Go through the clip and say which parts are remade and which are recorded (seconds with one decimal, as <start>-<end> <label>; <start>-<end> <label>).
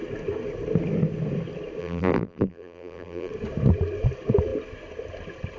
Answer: 0.0-1.8 recorded; 1.8-3.3 remade; 3.3-5.6 recorded